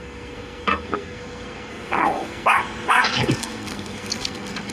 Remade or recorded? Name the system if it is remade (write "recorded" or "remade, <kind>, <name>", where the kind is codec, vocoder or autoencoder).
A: remade, codec, SNAC